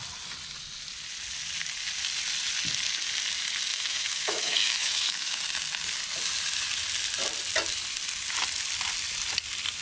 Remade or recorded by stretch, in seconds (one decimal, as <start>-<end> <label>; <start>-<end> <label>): 0.0-3.7 recorded; 3.7-5.4 remade; 5.4-9.8 recorded